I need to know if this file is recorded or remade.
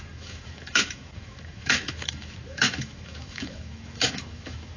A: remade